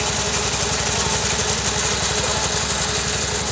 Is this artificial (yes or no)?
no